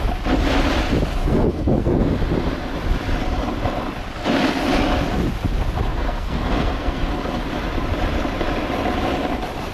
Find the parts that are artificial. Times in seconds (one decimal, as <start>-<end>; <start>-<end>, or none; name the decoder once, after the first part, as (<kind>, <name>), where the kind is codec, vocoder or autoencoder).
1.2-2.1 (codec, SNAC); 5.9-7.1